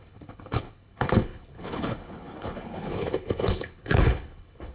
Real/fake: fake